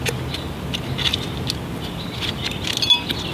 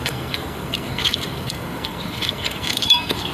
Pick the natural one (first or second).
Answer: first